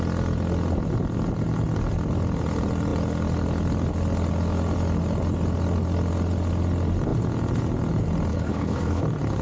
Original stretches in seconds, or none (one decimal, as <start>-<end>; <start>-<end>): 0.0-8.3; 9.0-9.4